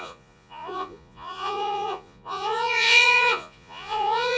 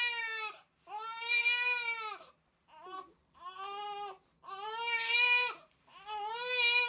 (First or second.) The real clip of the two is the second